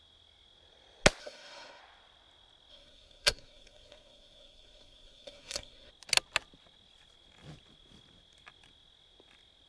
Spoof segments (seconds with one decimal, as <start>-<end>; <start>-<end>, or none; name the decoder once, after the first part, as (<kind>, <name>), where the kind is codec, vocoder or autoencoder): 1.2-1.8 (codec, SNAC); 2.7-5.9